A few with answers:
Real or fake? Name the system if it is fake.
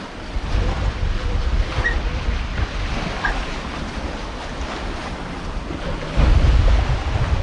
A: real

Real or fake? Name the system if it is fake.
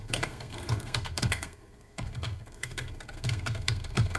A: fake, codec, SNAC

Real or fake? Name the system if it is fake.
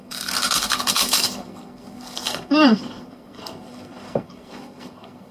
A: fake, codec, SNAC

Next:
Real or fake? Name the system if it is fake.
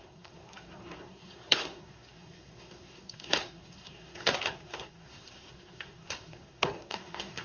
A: fake, codec, SNAC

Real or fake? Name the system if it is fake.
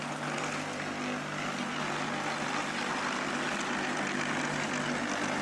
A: real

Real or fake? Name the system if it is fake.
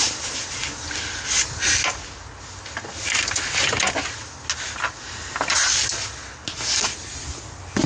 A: real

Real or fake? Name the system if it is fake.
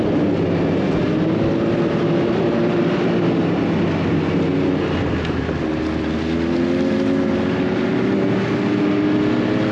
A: real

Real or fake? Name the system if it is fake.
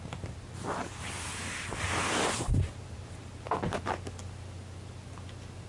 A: real